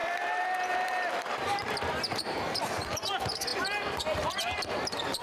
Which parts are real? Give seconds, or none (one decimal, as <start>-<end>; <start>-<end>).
none